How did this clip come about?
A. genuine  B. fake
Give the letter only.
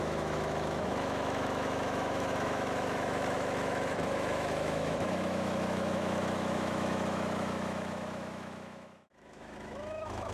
B